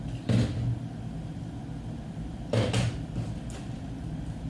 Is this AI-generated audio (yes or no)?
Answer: no